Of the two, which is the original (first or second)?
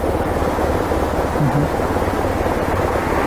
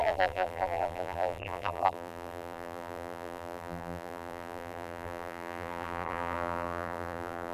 first